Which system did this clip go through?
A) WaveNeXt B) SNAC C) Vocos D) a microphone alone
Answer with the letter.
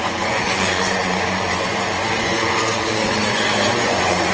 C